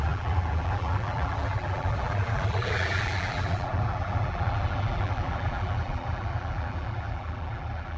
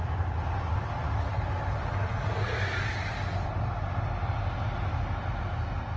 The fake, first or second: first